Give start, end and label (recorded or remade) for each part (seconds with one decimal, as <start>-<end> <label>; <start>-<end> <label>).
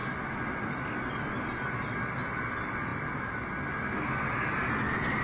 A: 0.0-5.2 recorded